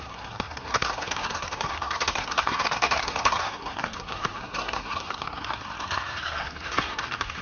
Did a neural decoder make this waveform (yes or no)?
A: yes